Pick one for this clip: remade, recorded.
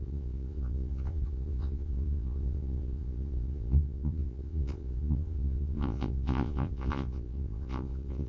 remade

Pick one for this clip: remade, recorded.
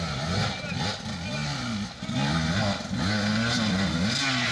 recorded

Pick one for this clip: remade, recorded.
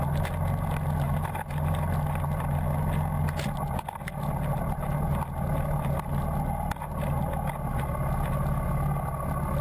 recorded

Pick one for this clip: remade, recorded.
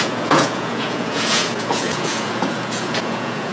remade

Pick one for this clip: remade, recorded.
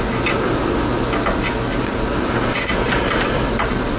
recorded